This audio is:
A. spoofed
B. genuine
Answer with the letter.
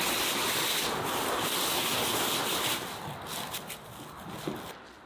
B